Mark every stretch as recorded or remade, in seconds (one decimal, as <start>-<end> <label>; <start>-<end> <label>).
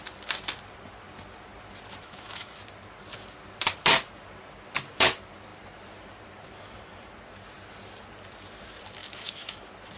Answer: 0.0-2.0 recorded; 2.0-2.6 remade; 2.6-9.0 recorded; 9.0-9.6 remade; 9.6-10.0 recorded